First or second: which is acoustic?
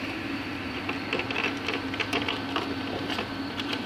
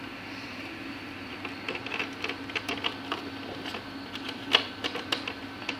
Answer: second